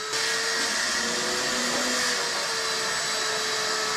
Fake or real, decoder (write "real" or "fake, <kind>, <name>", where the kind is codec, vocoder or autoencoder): real